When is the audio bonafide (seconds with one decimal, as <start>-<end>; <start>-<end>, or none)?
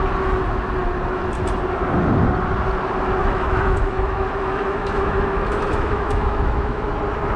0.0-3.2; 6.8-7.4